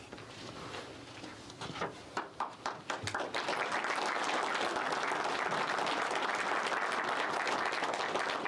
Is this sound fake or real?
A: real